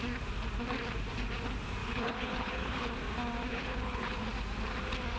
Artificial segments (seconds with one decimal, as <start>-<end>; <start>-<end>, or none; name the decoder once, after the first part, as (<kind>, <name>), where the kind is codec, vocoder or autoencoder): 1.8-2.9 (codec, HILCodec); 3.5-4.2